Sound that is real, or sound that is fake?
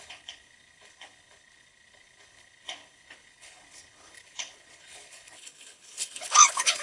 fake